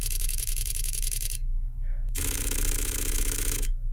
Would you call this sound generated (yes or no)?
yes